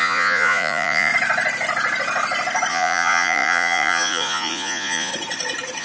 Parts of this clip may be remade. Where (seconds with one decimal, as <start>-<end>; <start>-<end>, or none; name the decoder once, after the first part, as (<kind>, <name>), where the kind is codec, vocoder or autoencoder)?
0.0-1.1 (vocoder, Vocos); 2.7-5.1